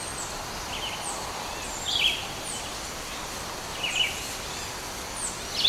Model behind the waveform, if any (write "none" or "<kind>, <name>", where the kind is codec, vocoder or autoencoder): none